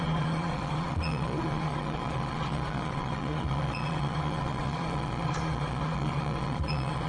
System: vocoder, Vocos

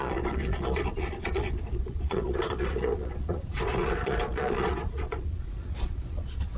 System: vocoder, Vocos